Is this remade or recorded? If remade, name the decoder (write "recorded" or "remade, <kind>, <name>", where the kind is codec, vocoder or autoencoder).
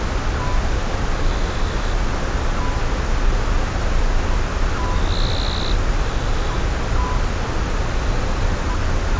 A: recorded